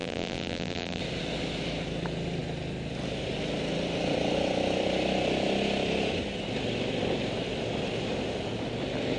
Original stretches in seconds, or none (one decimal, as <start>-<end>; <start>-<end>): 1.0-9.2